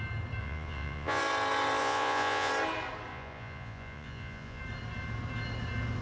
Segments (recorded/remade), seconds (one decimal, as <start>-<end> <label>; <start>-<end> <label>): 0.0-0.4 recorded; 0.4-1.2 remade; 1.2-1.8 recorded; 1.8-2.5 remade; 2.5-3.1 recorded; 3.1-4.6 remade; 4.6-6.0 recorded